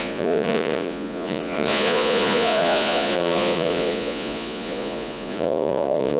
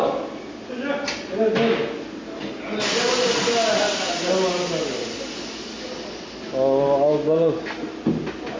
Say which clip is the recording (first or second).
second